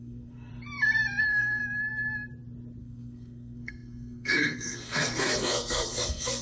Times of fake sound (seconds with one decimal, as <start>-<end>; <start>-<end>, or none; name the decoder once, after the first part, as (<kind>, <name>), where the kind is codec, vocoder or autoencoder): 0.0-0.5 (codec, SNAC); 1.2-1.6; 2.8-6.4